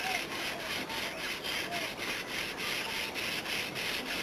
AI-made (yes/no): no